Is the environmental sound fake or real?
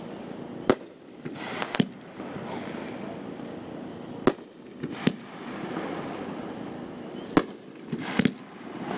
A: real